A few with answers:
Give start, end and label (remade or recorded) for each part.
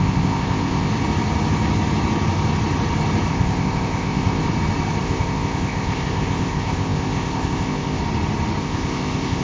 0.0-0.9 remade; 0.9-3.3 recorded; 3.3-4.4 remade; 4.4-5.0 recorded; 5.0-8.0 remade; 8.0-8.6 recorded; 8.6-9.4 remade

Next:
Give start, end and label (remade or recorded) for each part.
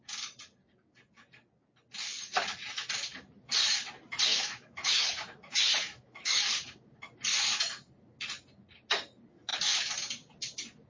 0.0-4.3 recorded; 4.3-6.4 remade; 6.4-10.9 recorded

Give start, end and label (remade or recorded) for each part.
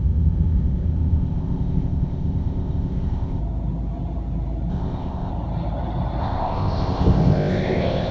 0.0-3.4 remade; 3.4-4.7 recorded; 4.7-5.3 remade; 5.3-6.2 recorded; 6.2-8.1 remade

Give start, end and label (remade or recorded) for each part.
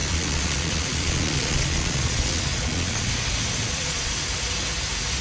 0.0-3.1 remade; 3.1-3.6 recorded; 3.6-4.1 remade; 4.1-5.2 recorded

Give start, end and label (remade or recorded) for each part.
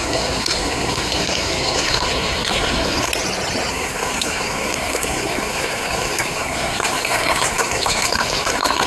0.0-3.1 remade; 3.1-3.7 recorded; 3.7-8.9 remade